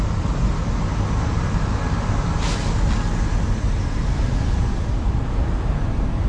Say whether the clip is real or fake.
real